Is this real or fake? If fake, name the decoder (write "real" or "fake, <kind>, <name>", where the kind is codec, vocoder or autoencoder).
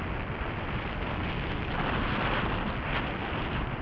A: real